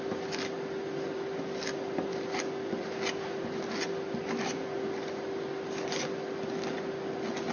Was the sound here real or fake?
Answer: real